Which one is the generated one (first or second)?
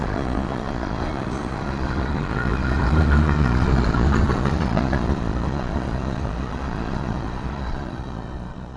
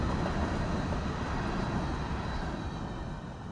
first